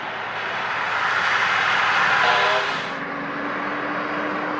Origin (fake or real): real